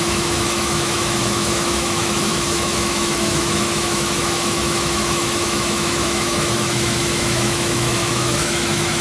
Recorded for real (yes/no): no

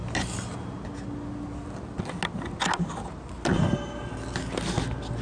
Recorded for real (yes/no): yes